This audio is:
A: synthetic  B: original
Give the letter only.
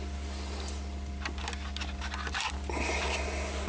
B